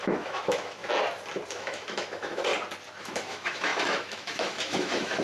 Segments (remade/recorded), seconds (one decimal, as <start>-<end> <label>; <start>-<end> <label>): 0.0-0.8 remade; 0.8-1.5 recorded; 1.5-2.5 remade; 2.5-3.0 recorded; 3.0-5.2 remade